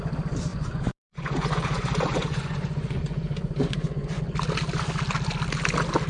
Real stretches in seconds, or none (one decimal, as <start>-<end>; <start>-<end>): 0.0-0.5; 4.2-6.1